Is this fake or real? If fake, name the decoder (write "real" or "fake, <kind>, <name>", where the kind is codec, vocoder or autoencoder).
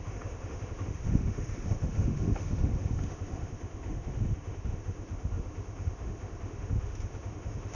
fake, autoencoder, DAC-VAE